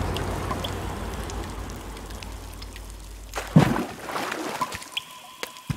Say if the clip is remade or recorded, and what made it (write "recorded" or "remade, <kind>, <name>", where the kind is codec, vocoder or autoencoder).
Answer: recorded